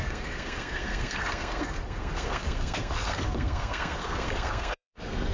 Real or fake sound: fake